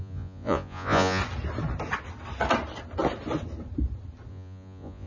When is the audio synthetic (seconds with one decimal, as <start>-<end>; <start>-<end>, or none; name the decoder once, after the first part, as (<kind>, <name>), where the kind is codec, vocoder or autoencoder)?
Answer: 0.0-1.2 (vocoder, Vocos); 4.3-5.1